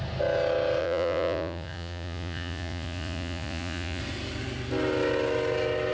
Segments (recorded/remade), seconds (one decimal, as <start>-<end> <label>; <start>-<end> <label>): 0.0-0.8 recorded; 0.8-4.0 remade; 4.0-5.9 recorded